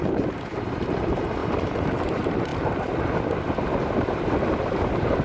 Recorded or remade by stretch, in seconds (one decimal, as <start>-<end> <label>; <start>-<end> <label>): 0.0-2.5 remade; 2.5-4.6 recorded; 4.6-5.2 remade